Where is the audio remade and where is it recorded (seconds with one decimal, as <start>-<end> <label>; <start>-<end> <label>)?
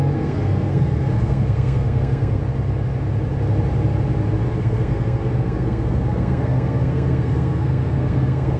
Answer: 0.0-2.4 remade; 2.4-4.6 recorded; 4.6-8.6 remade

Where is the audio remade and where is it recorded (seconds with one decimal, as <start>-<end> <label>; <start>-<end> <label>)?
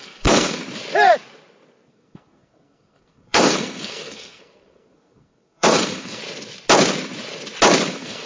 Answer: 0.0-0.6 remade; 0.6-1.9 recorded; 1.9-6.2 remade; 6.2-7.9 recorded; 7.9-8.3 remade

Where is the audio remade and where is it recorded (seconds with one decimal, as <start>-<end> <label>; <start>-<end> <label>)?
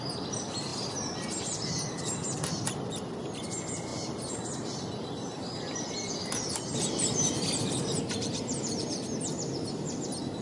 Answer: 0.0-0.7 remade; 0.7-1.4 recorded; 1.4-10.4 remade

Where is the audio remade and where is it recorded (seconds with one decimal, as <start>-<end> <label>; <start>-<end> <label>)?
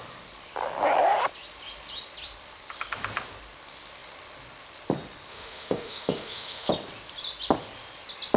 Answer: 0.0-5.3 recorded; 5.3-6.7 remade; 6.7-8.4 recorded